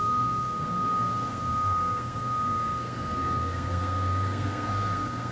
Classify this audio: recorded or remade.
remade